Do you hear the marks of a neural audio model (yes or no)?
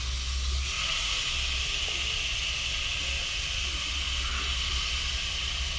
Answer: no